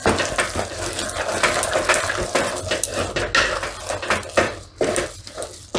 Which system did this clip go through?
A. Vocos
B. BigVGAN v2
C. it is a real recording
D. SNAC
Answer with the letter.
C